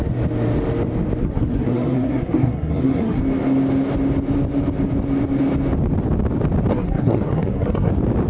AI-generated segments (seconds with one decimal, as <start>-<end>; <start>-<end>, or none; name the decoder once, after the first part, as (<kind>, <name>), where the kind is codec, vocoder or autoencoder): 1.2-3.2 (codec, SNAC); 6.7-7.9